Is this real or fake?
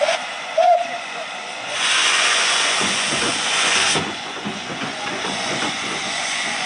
fake